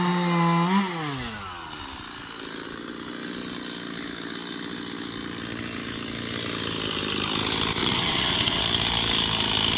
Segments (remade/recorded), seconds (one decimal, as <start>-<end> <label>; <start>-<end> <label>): 0.0-7.8 recorded; 7.8-8.6 remade; 8.6-9.8 recorded